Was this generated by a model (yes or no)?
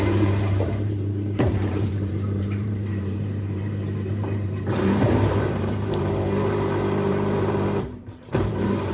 yes